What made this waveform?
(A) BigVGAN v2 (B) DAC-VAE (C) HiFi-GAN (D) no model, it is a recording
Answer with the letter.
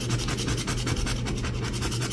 D